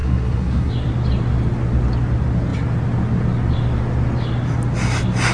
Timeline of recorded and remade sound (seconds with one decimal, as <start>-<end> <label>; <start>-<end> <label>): 0.0-0.7 remade; 0.7-5.3 recorded